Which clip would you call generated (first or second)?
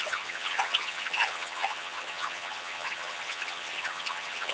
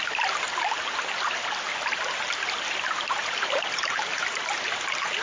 first